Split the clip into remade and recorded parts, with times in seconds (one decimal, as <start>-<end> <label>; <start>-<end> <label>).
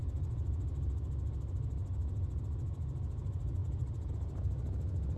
0.0-5.2 recorded